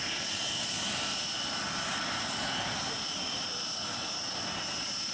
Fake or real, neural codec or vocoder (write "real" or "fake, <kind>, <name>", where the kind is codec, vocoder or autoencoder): real